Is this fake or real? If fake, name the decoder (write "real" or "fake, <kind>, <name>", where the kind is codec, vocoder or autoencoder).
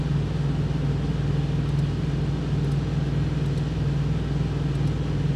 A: real